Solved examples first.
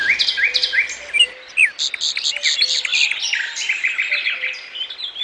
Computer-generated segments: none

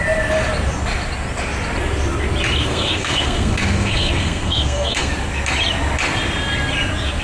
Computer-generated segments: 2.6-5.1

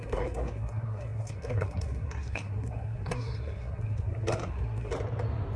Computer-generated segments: 0.0-4.9

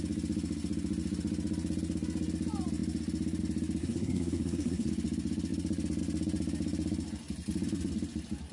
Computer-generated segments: 3.8-4.9

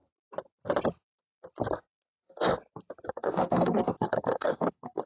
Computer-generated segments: 3.1-5.1

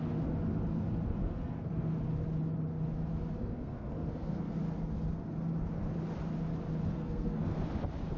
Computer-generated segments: 1.3-2.0; 3.4-4.5; 6.9-7.6

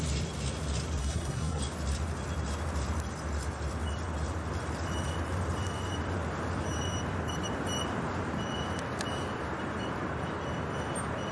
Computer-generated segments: 1.0-1.6

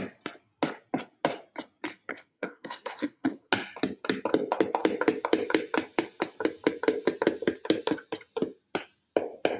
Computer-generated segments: 2.1-3.5